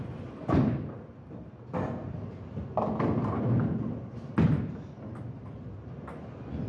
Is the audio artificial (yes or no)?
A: no